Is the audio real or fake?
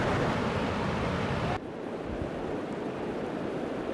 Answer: real